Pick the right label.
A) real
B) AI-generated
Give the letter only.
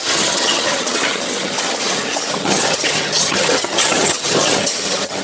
B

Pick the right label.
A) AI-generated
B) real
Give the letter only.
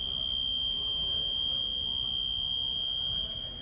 B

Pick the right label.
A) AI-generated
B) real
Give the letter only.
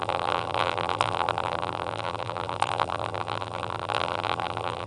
A